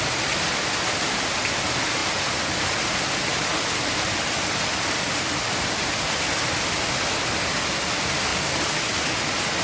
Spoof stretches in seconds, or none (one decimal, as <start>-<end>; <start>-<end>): none